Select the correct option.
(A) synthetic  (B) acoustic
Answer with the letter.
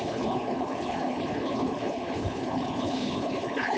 A